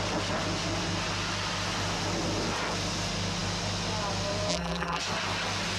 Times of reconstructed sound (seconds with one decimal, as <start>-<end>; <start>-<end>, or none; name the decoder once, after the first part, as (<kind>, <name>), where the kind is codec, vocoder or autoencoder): 4.5-5.0 (vocoder, BigVGAN v2)